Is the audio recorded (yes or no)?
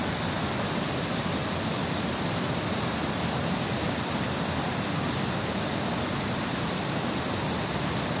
yes